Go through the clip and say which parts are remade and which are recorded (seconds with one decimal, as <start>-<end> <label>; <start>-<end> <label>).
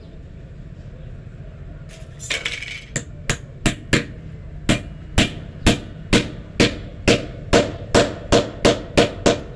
0.0-9.6 recorded